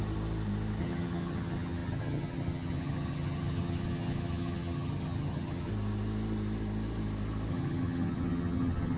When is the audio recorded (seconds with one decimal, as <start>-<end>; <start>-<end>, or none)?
0.0-0.8; 5.7-7.5